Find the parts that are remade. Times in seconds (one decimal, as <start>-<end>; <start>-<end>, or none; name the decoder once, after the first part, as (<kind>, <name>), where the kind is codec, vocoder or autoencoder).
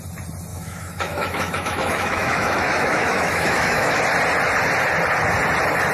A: 0.5-4.0 (autoencoder, DAC-VAE)